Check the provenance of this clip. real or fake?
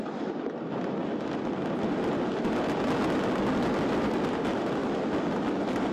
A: real